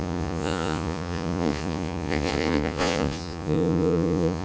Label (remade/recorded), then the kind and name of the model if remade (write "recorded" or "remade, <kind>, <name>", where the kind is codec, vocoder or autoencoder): remade, vocoder, Vocos